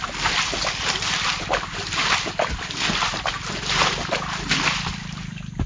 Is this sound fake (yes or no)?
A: yes